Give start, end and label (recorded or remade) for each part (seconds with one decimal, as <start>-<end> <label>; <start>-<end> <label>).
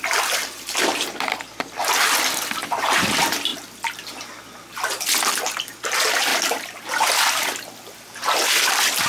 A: 0.0-3.5 remade; 3.5-5.7 recorded; 5.7-9.1 remade